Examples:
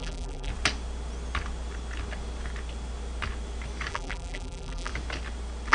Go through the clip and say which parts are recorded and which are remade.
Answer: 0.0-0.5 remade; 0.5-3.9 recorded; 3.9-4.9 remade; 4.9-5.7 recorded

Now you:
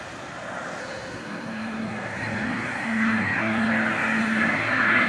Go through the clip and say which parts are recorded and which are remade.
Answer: 0.0-0.8 recorded; 0.8-3.7 remade; 3.7-4.2 recorded; 4.2-5.1 remade

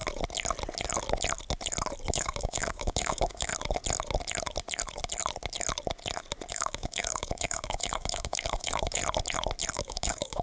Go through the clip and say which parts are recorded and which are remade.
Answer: 0.0-2.1 recorded; 2.1-3.5 remade; 3.5-6.5 recorded; 6.5-9.0 remade; 9.0-9.7 recorded; 9.7-10.4 remade

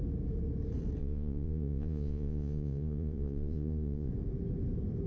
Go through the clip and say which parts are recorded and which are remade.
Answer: 0.0-1.0 recorded; 1.0-4.1 remade; 4.1-5.1 recorded

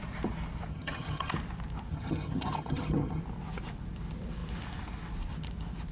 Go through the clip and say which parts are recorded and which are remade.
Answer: 0.0-0.7 recorded; 0.7-1.3 remade; 1.3-1.9 recorded; 1.9-3.2 remade; 3.2-5.9 recorded

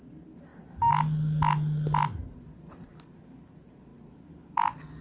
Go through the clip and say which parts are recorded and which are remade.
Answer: 0.0-5.0 recorded

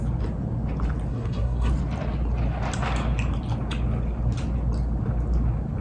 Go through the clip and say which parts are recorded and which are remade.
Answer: 0.0-1.1 recorded; 1.1-1.7 remade; 1.7-5.8 recorded